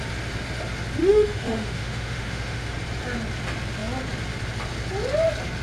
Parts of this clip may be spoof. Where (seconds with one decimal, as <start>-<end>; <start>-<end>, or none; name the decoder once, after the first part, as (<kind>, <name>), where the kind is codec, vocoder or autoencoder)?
1.0-2.7 (autoencoder, DAC-VAE)